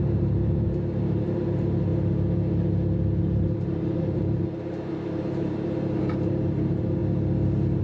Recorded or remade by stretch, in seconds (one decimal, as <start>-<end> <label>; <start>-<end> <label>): 0.0-1.9 remade; 1.9-3.2 recorded; 3.2-7.0 remade; 7.0-7.8 recorded